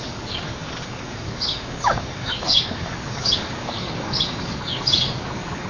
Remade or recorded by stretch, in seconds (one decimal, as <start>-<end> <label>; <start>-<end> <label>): 0.0-5.7 remade